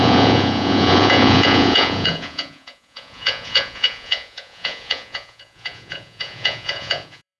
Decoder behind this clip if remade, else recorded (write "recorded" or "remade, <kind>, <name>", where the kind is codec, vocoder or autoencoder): remade, vocoder, Vocos